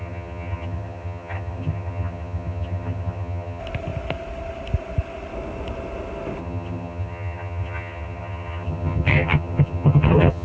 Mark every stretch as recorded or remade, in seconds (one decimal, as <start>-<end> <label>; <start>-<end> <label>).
0.0-3.6 remade; 3.6-6.4 recorded; 6.4-10.4 remade

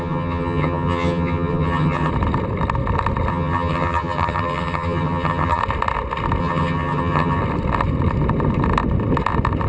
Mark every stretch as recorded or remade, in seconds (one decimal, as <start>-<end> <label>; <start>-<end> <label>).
0.0-2.1 remade; 2.1-3.3 recorded; 3.3-5.6 remade; 5.6-6.4 recorded; 6.4-7.4 remade; 7.4-9.7 recorded

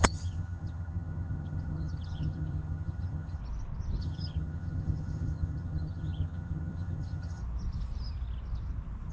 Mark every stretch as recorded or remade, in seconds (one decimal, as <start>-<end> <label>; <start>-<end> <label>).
0.0-3.4 remade; 3.4-4.0 recorded; 4.0-7.4 remade; 7.4-9.1 recorded

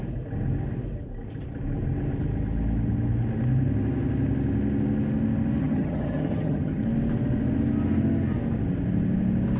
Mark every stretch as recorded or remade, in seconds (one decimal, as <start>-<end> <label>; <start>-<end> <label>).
0.0-5.6 recorded; 5.6-6.8 remade; 6.8-9.6 recorded

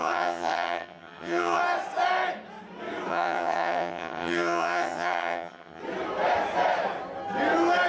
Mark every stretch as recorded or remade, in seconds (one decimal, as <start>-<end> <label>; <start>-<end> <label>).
0.0-1.6 remade; 1.6-3.1 recorded; 3.1-5.8 remade; 5.8-7.9 recorded

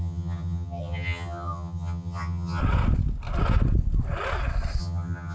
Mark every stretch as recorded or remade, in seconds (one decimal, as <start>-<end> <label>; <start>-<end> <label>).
0.0-2.6 remade; 2.6-4.8 recorded; 4.8-5.3 remade

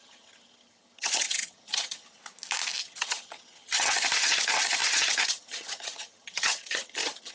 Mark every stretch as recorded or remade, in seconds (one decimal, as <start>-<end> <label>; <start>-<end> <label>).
0.0-2.2 remade; 2.2-2.8 recorded; 2.8-7.3 remade

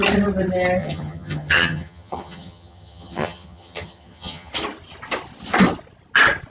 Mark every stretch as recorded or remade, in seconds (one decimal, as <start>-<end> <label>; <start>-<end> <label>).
0.0-0.8 recorded; 0.8-4.5 remade; 4.5-6.5 recorded